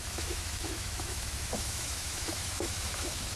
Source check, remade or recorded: remade